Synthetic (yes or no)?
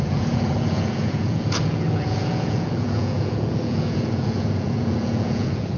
yes